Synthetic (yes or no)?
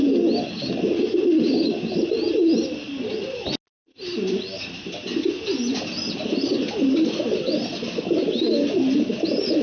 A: no